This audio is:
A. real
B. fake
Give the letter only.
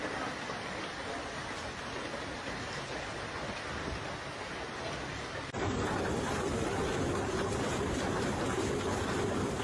A